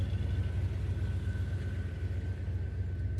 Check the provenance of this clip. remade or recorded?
recorded